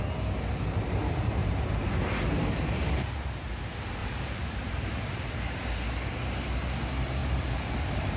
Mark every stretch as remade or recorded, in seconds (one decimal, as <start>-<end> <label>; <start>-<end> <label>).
0.0-1.4 recorded; 1.4-2.9 remade; 2.9-4.0 recorded; 4.0-4.7 remade; 4.7-8.2 recorded